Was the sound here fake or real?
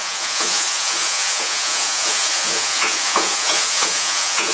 fake